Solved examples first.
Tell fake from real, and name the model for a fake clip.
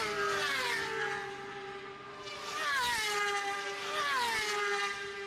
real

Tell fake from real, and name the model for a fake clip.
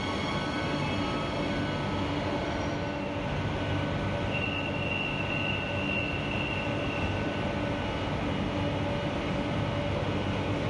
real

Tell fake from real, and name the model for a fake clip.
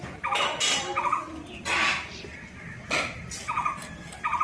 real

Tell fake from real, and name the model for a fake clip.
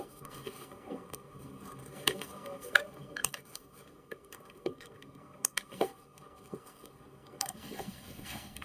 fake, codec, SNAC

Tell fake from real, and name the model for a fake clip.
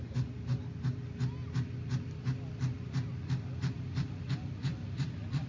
real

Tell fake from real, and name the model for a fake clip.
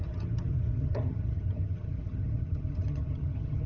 fake, vocoder, HiFi-GAN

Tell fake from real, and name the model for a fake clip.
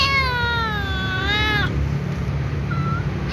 real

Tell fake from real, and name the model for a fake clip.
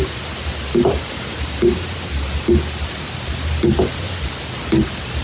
real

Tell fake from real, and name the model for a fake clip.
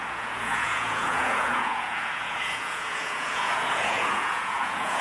fake, vocoder, Vocos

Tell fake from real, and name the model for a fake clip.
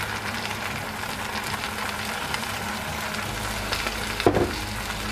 real